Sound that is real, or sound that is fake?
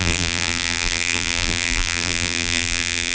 fake